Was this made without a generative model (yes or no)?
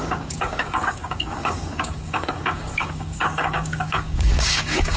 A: no